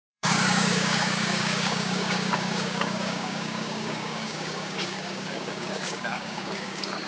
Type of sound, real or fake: fake